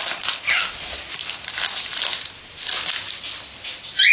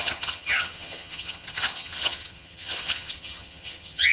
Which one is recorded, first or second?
first